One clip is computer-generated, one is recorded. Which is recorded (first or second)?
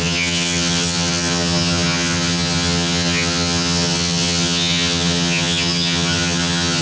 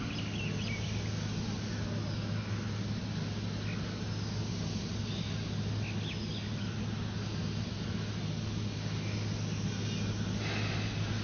second